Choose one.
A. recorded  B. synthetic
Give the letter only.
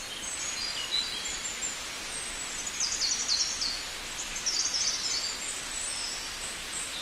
A